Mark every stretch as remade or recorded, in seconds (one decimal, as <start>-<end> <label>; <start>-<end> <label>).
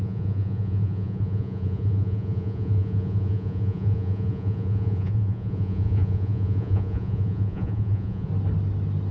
0.0-8.3 remade; 8.3-9.1 recorded